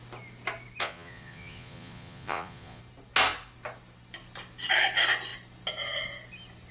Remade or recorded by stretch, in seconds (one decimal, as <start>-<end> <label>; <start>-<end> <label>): 0.0-0.8 recorded; 0.8-2.8 remade; 2.8-6.7 recorded